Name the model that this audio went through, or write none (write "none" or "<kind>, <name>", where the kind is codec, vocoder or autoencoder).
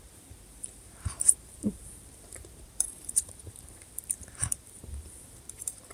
vocoder, BigVGAN v2